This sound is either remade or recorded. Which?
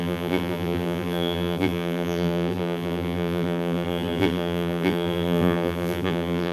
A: remade